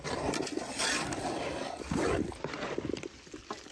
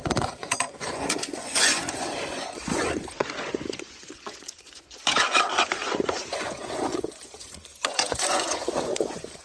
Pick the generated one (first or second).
second